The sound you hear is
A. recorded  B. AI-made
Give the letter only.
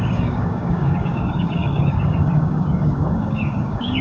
B